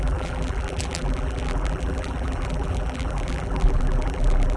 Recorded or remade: remade